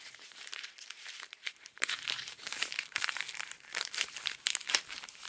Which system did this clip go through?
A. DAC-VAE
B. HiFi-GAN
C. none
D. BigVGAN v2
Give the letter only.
D